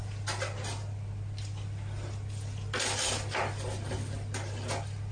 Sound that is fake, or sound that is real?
real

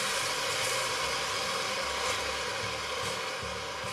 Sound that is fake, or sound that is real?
real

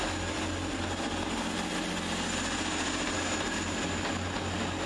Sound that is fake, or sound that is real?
real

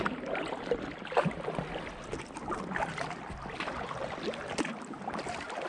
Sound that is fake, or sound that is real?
real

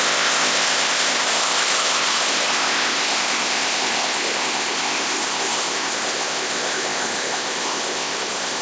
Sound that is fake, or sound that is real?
fake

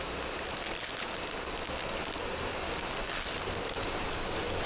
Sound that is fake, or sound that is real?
real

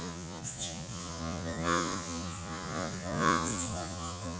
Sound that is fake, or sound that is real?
fake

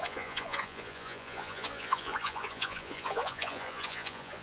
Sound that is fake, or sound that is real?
fake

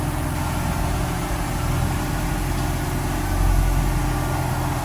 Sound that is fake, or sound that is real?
real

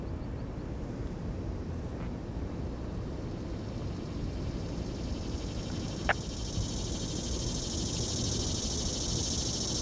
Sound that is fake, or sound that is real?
real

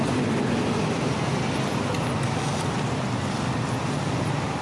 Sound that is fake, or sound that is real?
real